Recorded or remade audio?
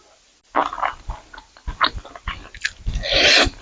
recorded